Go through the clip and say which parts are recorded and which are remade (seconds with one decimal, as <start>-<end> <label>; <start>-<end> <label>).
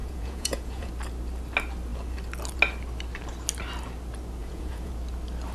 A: 0.0-0.9 remade; 0.9-4.4 recorded; 4.4-4.9 remade; 4.9-5.5 recorded